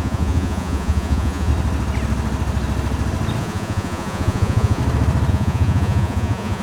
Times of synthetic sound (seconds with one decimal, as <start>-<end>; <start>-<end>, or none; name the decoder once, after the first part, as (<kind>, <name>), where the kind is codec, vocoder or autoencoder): 0.0-1.5 (vocoder, Vocos); 3.4-4.8; 5.3-6.6